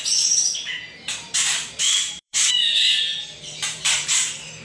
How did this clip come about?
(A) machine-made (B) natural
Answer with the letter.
A